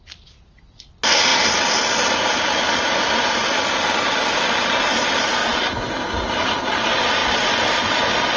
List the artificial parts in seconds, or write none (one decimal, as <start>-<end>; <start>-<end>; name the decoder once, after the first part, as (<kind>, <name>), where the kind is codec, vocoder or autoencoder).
none